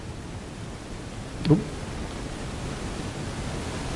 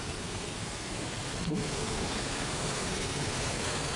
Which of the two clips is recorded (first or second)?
first